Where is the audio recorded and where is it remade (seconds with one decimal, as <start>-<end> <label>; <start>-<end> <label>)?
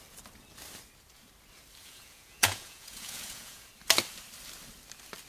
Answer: 0.0-1.8 recorded; 1.8-3.7 remade; 3.7-5.3 recorded